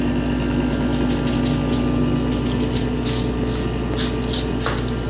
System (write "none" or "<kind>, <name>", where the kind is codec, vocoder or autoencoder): none